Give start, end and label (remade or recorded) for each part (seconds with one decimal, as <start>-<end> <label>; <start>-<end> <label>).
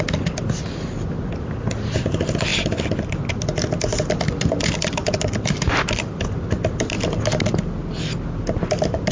0.0-9.1 recorded